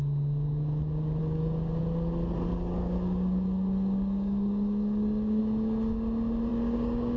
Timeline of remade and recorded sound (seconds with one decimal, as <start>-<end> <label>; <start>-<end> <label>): 0.0-1.2 recorded; 1.2-1.8 remade; 1.8-2.5 recorded; 2.5-5.4 remade; 5.4-6.5 recorded; 6.5-7.2 remade